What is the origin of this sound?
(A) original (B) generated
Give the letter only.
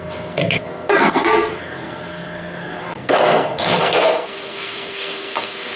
B